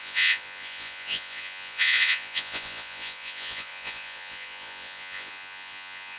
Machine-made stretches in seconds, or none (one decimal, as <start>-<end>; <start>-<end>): 0.0-6.2